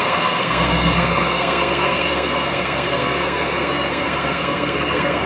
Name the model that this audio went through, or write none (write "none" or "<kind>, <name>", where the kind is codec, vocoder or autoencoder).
codec, SNAC